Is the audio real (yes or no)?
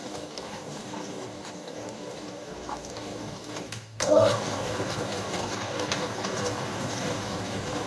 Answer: no